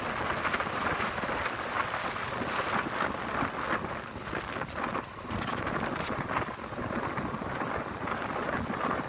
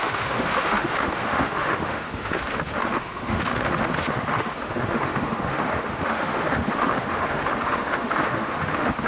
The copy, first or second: second